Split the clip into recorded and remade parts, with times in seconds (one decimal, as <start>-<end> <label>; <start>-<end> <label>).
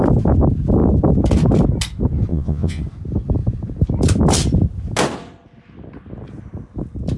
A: 0.0-2.3 recorded; 2.3-2.8 remade; 2.8-7.2 recorded